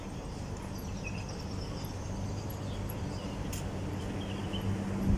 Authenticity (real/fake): real